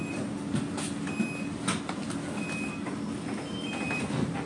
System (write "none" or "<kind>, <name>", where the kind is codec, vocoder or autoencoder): none